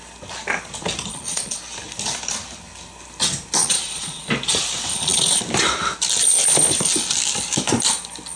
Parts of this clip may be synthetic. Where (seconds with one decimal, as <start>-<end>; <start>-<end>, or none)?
1.1-1.6; 3.6-4.3; 4.9-5.4